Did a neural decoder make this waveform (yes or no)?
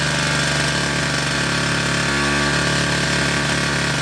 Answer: no